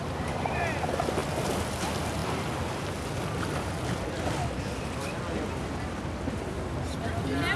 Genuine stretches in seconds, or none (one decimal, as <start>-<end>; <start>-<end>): 0.0-7.6